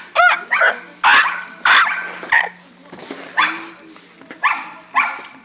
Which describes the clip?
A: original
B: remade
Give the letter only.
A